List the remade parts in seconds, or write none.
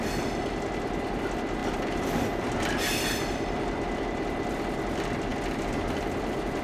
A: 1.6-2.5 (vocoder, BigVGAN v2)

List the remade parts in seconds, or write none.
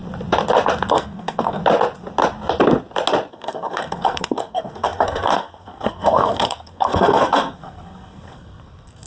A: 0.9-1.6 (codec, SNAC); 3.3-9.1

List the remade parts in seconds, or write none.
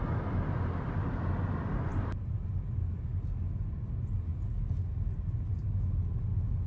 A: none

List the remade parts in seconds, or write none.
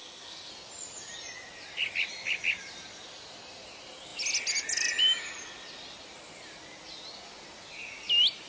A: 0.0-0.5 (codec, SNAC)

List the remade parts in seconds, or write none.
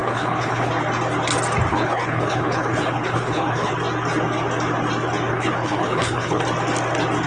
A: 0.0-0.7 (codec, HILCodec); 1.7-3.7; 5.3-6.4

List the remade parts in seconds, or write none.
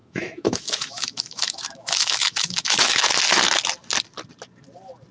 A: 0.0-3.1 (autoencoder, DAC-VAE)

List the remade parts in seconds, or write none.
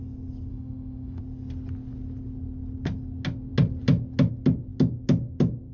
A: 0.5-1.2 (autoencoder, DAC-VAE)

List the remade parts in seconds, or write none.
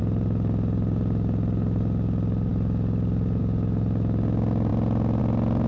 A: none